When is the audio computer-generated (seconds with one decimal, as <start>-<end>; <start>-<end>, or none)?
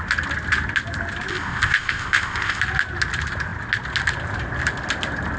1.3-2.6